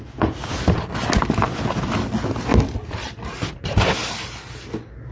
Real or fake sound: real